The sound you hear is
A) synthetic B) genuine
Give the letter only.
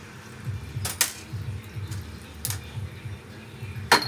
B